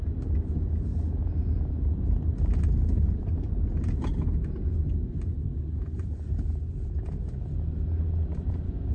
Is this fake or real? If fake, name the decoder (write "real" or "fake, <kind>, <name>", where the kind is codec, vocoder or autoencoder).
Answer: real